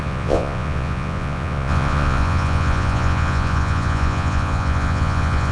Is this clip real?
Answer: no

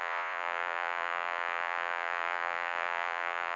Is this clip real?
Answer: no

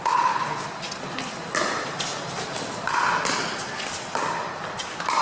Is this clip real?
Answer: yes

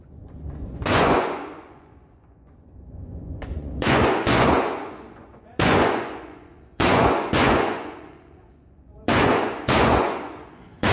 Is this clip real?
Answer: no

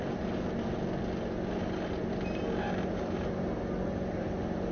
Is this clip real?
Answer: yes